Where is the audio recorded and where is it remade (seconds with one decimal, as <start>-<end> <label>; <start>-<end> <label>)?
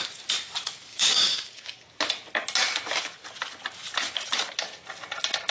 0.0-0.9 recorded; 0.9-2.0 remade; 2.0-5.5 recorded